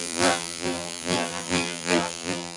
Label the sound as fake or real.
fake